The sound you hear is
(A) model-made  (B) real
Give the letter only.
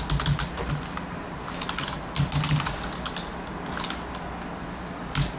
B